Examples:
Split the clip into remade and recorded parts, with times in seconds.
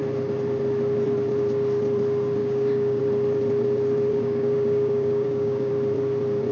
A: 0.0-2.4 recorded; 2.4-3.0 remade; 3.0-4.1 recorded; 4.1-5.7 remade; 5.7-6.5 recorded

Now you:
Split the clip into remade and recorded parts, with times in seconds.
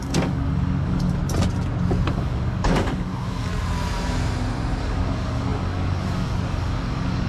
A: 0.0-1.2 remade; 1.2-2.1 recorded; 2.1-3.5 remade; 3.5-4.8 recorded; 4.8-7.3 remade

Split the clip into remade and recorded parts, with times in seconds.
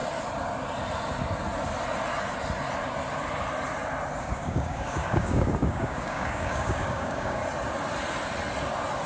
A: 0.0-4.2 recorded; 4.2-7.4 remade; 7.4-9.1 recorded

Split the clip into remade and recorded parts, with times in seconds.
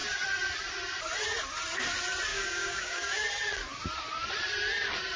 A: 0.0-2.3 recorded; 2.3-3.1 remade; 3.1-5.2 recorded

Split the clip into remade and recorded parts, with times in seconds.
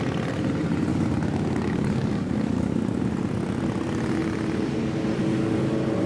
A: 0.0-0.9 recorded; 0.9-3.0 remade; 3.0-6.1 recorded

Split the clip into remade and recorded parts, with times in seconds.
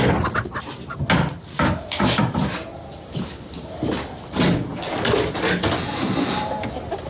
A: 0.0-1.4 recorded; 1.4-2.2 remade; 2.2-7.1 recorded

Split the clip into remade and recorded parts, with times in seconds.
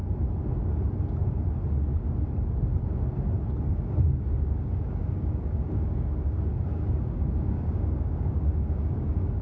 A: 0.0-3.7 recorded; 3.7-9.4 remade